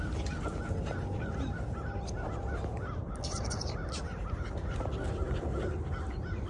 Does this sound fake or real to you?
real